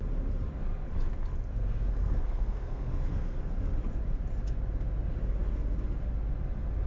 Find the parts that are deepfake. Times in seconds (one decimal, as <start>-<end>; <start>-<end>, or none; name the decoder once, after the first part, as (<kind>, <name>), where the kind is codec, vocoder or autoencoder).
1.5-3.4 (codec, SNAC)